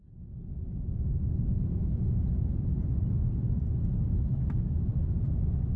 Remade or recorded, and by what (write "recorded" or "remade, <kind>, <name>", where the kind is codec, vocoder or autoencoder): recorded